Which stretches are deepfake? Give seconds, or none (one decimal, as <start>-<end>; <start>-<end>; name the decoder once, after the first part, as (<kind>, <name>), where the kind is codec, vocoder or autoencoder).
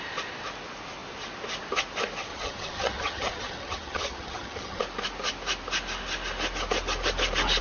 2.3-4.8 (vocoder, HiFi-GAN)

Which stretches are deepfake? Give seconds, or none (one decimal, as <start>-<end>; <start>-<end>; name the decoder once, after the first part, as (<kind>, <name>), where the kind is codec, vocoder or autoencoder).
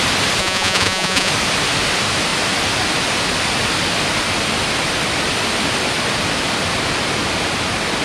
0.4-1.3 (vocoder, Vocos)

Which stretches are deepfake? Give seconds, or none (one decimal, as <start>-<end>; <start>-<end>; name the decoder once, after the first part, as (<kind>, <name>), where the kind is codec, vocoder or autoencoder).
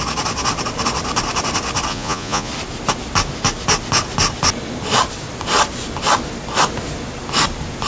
1.9-2.5 (vocoder, Vocos)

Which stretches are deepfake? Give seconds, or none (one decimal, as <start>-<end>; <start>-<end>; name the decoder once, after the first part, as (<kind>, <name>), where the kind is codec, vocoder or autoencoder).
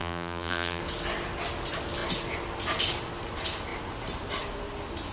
0.0-0.8 (vocoder, BigVGAN v2)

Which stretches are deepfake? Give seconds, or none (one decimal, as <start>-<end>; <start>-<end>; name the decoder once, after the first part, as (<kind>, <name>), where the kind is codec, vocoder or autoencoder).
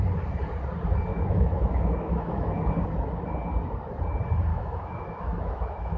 1.1-2.7 (autoencoder, DAC-VAE); 4.5-6.0